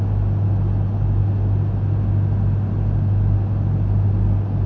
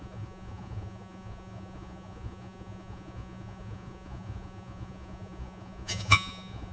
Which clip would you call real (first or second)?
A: first